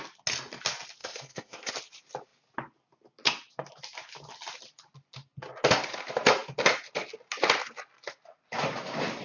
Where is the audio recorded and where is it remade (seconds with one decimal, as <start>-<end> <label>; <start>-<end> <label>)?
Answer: 0.0-1.0 recorded; 1.0-1.7 remade; 1.7-9.2 recorded